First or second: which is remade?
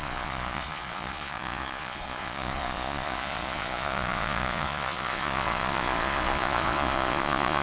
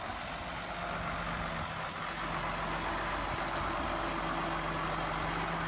first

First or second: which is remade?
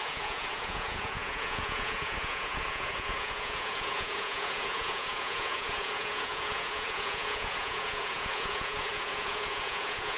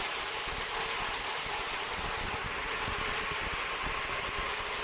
first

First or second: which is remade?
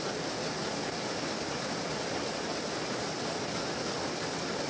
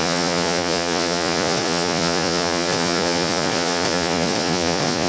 second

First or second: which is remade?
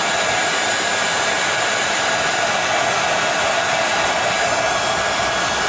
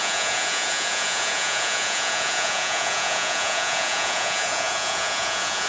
second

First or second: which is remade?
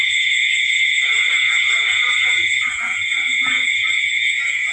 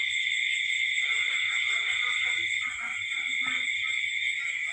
first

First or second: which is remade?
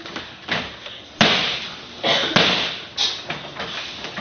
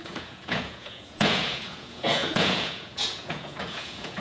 second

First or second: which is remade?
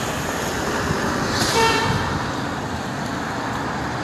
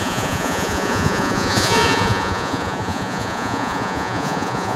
second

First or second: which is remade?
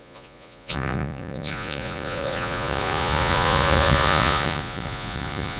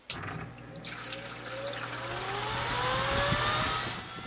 first